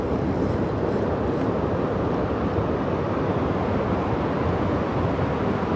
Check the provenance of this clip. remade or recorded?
remade